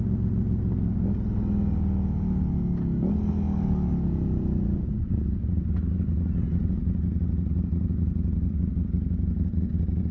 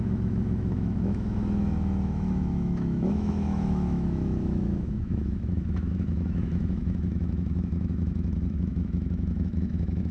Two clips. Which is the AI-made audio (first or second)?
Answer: second